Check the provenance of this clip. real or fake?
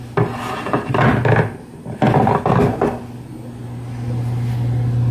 real